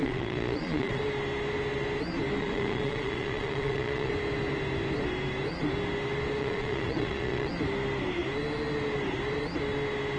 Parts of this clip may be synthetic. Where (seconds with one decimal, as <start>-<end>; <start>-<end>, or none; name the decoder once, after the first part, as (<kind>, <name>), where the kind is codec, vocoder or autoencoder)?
0.0-1.0 (vocoder, Vocos); 2.4-4.1; 6.4-7.5